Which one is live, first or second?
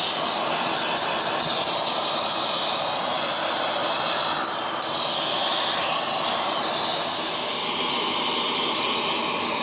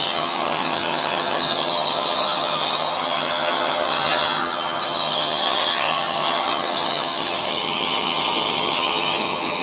first